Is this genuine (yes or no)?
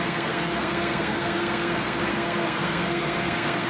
no